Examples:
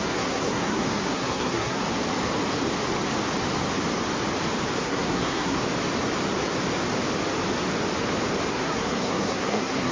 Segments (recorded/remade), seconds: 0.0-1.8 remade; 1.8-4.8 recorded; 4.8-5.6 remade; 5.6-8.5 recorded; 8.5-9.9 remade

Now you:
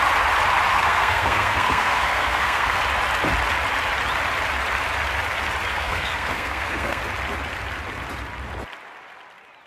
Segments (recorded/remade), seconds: 0.0-0.7 recorded; 0.7-2.8 remade; 2.8-5.7 recorded; 5.7-7.0 remade; 7.0-9.7 recorded

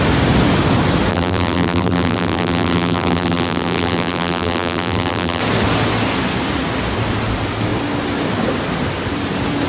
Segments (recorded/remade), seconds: 0.0-1.1 recorded; 1.1-5.4 remade; 5.4-9.7 recorded

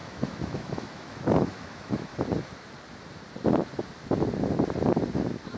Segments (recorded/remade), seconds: 0.0-2.1 remade; 2.1-5.6 recorded

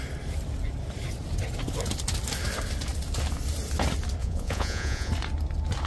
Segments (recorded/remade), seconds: 0.0-4.2 recorded; 4.2-5.1 remade; 5.1-5.9 recorded

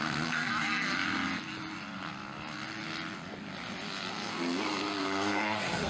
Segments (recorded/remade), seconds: 0.0-0.9 remade; 0.9-4.1 recorded; 4.1-5.9 remade